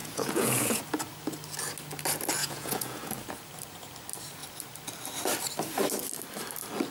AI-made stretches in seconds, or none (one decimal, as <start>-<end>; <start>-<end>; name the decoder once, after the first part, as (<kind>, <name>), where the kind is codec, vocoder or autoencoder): 0.0-0.8 (vocoder, Vocos); 2.4-3.1